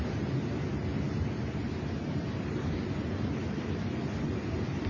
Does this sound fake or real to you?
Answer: real